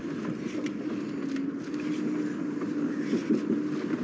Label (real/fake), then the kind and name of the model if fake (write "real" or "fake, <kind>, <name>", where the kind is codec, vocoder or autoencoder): real